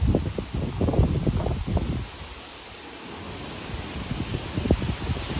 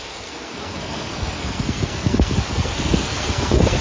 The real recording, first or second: first